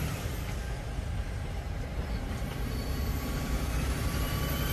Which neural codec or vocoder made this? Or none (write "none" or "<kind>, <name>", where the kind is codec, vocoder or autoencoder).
vocoder, BigVGAN v2